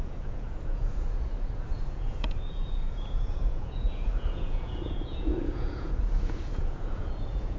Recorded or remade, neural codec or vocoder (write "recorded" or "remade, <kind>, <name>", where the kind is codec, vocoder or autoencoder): remade, vocoder, Vocos